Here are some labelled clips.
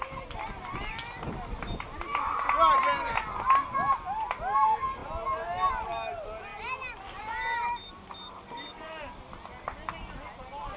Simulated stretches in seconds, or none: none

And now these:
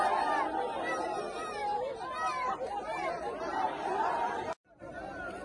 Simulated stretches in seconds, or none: 1.6-4.8 (vocoder, BigVGAN v2)

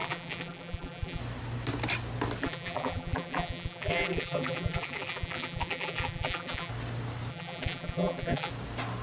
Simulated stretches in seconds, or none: 0.0-1.2 (vocoder, BigVGAN v2); 2.4-6.7; 7.3-8.5

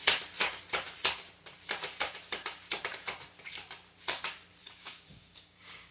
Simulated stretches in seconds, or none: 4.6-5.9 (codec, DAC)

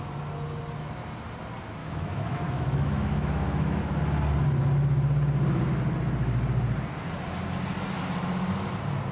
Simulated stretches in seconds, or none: 1.8-3.8 (autoencoder, DAC-VAE)

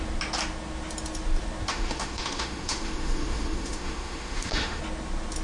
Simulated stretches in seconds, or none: 1.7-4.8 (autoencoder, DAC-VAE)

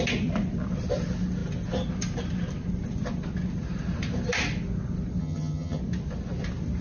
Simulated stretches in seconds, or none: 5.2-5.8 (vocoder, HiFi-GAN)

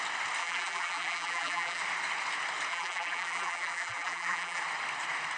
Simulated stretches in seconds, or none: 0.4-1.8 (vocoder, BigVGAN v2); 2.7-4.6